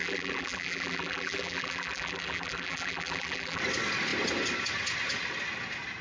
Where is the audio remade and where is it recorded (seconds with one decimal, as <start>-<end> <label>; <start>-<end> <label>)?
0.0-3.6 remade; 3.6-6.0 recorded